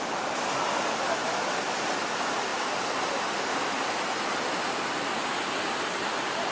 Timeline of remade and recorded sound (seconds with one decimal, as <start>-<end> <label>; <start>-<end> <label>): 0.0-6.5 recorded